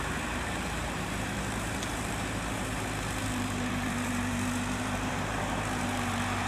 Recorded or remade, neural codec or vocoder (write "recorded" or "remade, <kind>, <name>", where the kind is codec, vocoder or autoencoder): remade, vocoder, BigVGAN v2